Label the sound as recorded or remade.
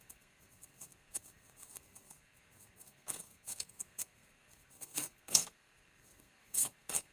remade